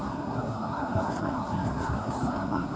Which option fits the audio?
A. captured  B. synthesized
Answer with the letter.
B